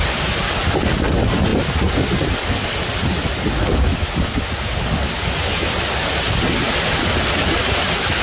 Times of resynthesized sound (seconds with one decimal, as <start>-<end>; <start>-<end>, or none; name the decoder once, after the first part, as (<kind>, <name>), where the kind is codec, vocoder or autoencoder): none